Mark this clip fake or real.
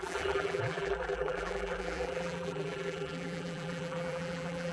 fake